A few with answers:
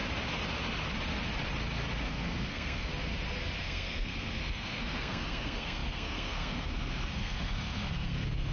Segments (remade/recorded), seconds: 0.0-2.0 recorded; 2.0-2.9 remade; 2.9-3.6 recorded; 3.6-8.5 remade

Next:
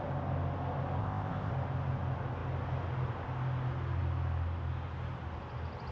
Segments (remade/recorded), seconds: 0.0-1.0 recorded; 1.0-1.5 remade; 1.5-5.9 recorded